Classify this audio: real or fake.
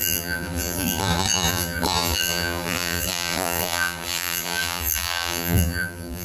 fake